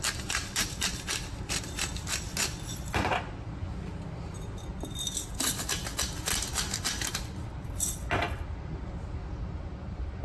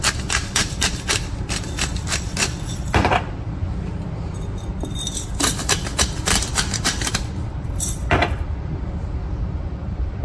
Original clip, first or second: first